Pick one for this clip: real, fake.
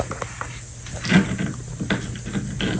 real